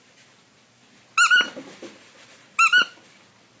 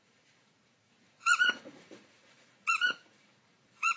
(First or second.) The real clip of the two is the first